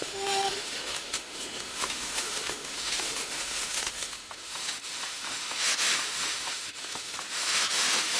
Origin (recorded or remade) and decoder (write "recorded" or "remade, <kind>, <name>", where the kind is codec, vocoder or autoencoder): remade, autoencoder, DAC-VAE